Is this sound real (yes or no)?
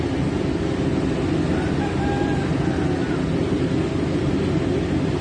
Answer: yes